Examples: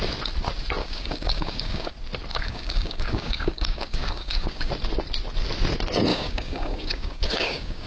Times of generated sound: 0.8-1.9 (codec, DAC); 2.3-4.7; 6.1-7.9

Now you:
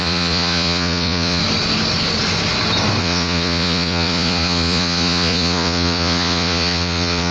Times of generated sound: 0.0-1.4 (vocoder, Vocos); 3.0-7.3

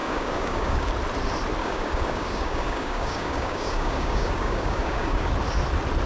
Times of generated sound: 0.0-0.9 (codec, DAC); 1.6-5.3

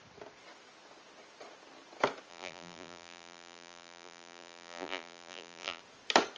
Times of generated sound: 2.3-5.8 (vocoder, BigVGAN v2)

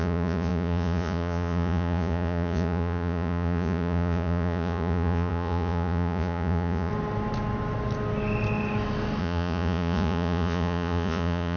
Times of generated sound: 0.0-6.9 (vocoder, Vocos); 9.2-11.6